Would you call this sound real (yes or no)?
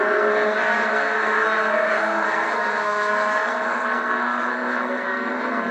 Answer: no